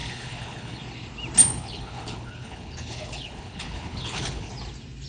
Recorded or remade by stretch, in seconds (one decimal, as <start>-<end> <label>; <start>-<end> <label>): 0.0-0.8 remade; 0.8-1.4 recorded; 1.4-4.5 remade; 4.5-5.1 recorded